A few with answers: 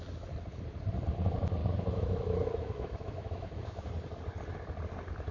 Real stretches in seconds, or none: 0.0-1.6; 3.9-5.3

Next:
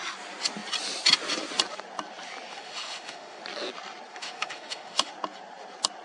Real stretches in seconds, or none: 0.0-2.5; 3.4-4.1; 5.1-6.0

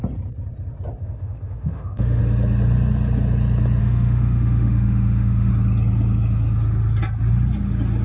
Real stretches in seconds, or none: 0.0-1.0; 2.2-3.8; 5.5-8.0